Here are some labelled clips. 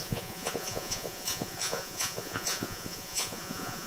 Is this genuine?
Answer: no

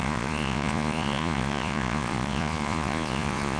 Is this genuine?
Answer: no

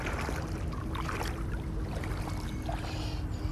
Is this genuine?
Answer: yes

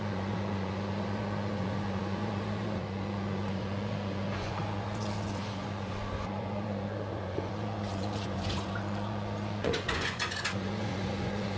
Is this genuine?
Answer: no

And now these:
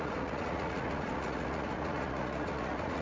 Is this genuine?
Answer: no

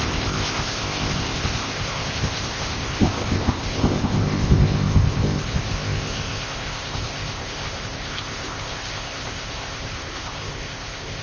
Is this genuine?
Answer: no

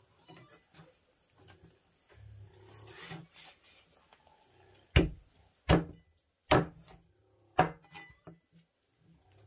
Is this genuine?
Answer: yes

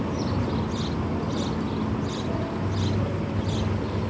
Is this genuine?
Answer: yes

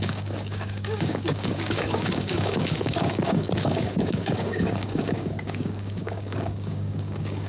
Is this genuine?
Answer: no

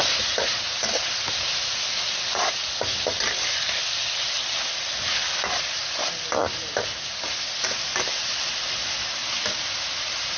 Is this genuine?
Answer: yes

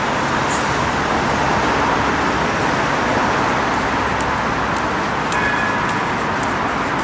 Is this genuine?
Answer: yes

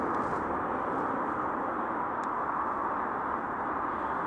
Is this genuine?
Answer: yes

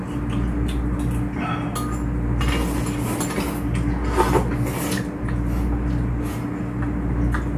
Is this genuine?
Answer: yes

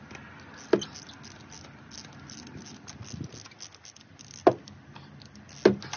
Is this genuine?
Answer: yes